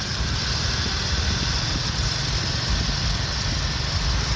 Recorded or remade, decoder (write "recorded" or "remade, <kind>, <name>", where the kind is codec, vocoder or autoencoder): recorded